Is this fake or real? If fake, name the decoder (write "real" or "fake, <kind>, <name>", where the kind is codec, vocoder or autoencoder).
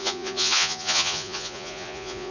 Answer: fake, vocoder, Vocos